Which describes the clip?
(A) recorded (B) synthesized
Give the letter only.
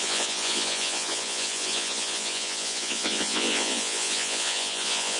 B